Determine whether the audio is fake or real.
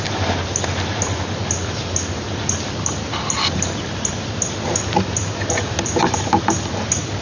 real